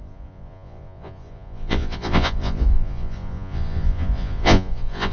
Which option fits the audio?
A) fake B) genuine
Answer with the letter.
A